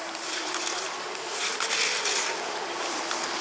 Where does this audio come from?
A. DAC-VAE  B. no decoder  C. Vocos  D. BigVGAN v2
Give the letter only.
B